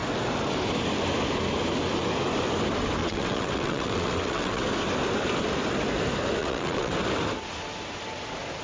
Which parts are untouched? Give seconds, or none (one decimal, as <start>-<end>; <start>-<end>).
0.0-3.0; 4.6-6.4; 6.9-8.6